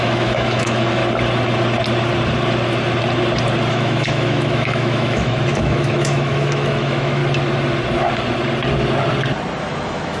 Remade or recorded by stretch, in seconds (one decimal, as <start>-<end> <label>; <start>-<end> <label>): 0.0-1.0 remade; 1.0-3.7 recorded; 3.7-7.2 remade; 7.2-9.6 recorded; 9.6-10.2 remade